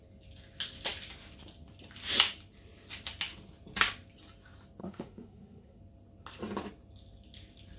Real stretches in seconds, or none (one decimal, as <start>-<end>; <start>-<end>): 0.0-4.8; 5.8-7.8